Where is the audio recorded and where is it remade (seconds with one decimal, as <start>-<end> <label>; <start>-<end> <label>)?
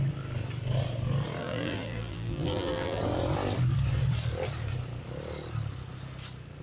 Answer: 0.0-1.4 recorded; 1.4-3.0 remade; 3.0-6.6 recorded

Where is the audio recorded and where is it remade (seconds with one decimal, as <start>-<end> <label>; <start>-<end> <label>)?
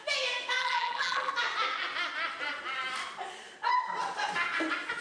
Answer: 0.0-0.6 recorded; 0.6-1.3 remade; 1.3-5.0 recorded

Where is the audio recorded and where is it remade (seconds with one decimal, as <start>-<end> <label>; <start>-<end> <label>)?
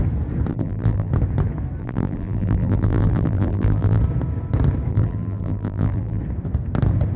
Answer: 0.0-0.5 recorded; 0.5-1.1 remade; 1.1-1.8 recorded; 1.8-4.0 remade; 4.0-4.9 recorded; 4.9-6.2 remade; 6.2-7.2 recorded